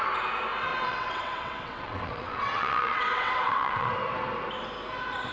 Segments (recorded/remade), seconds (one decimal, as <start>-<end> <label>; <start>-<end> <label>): 0.0-0.7 recorded; 0.7-3.9 remade; 3.9-5.3 recorded